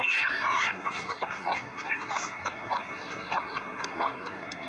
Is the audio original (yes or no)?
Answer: no